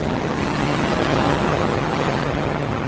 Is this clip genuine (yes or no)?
no